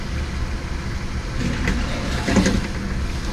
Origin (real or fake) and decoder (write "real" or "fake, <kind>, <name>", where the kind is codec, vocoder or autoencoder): real